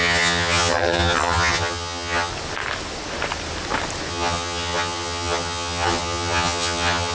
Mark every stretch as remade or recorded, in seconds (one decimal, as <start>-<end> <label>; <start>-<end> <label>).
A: 0.0-2.3 remade; 2.3-4.1 recorded; 4.1-7.1 remade